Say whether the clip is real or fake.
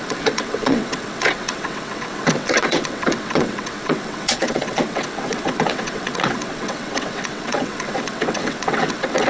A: fake